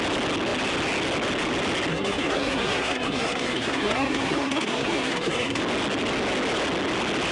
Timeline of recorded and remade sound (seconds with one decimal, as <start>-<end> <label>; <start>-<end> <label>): 0.0-1.9 recorded; 1.9-5.6 remade; 5.6-7.3 recorded